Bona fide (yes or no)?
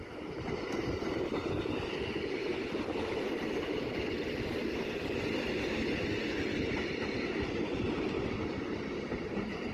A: yes